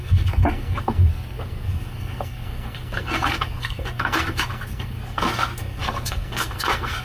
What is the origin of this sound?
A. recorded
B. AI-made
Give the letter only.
B